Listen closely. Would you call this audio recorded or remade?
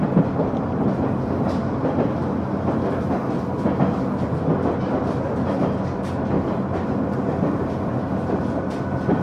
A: recorded